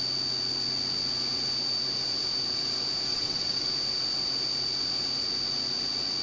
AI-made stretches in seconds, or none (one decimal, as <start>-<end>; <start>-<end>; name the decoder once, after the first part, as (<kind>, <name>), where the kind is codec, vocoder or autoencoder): 3.1-3.7 (vocoder, WaveNeXt)